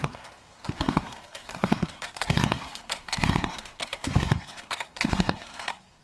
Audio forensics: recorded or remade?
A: remade